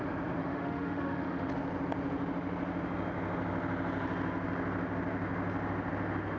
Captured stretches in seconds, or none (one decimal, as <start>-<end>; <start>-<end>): 0.0-0.4; 1.5-6.4